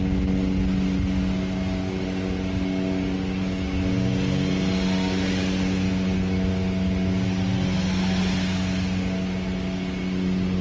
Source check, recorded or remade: recorded